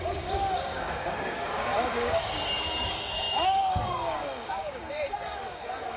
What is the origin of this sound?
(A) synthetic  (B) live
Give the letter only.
A